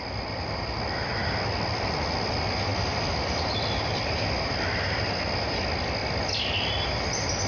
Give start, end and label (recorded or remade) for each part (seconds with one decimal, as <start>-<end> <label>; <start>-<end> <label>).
0.0-7.5 recorded